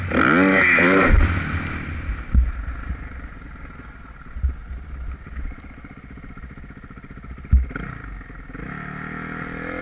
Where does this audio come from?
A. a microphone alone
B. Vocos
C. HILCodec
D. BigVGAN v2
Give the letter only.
A